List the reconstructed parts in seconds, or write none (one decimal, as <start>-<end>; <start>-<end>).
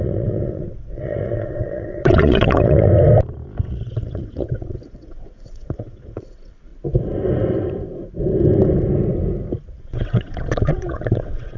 0.0-2.9; 3.6-6.7; 9.8-11.6